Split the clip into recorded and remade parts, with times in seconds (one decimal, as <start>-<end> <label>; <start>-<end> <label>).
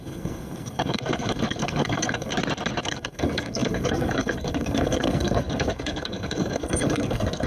0.0-2.3 remade; 2.3-2.8 recorded; 2.8-7.5 remade